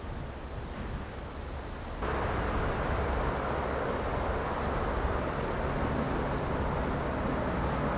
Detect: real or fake real